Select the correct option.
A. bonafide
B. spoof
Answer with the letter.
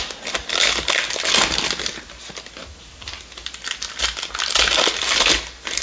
A